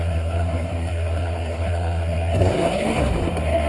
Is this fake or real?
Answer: fake